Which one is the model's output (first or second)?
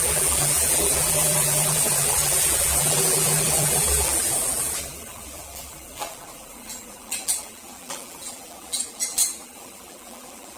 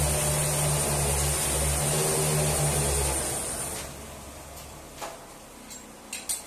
first